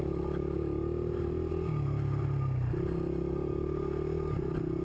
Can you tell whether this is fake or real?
real